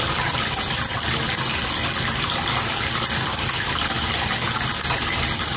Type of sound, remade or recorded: recorded